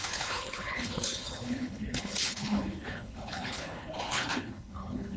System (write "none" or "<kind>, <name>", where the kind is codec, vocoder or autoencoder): codec, HILCodec